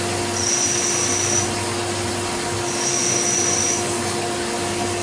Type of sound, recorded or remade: recorded